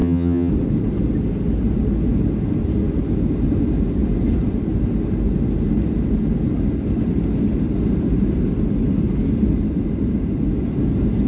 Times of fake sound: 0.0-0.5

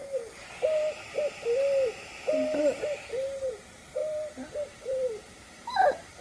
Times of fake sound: 3.5-6.2

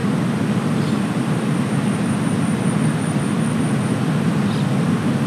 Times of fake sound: none

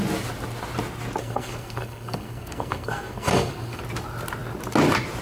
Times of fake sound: 1.2-3.8

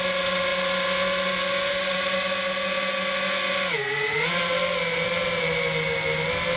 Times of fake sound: none

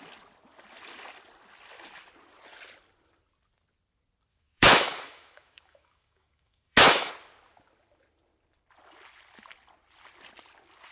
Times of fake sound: 4.3-7.1

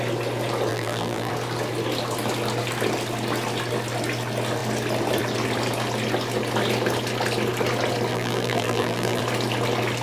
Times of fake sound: 0.7-1.3; 8.1-9.2